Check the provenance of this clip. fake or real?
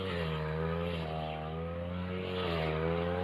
real